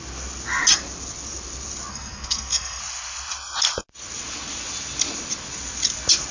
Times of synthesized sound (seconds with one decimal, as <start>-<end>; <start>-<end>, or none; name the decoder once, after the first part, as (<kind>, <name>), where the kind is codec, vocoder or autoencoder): 1.9-2.8 (codec, SNAC)